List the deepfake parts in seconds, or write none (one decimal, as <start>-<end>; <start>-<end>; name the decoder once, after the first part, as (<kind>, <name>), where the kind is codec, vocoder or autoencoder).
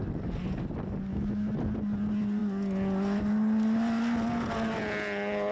1.1-1.6 (autoencoder, DAC-VAE)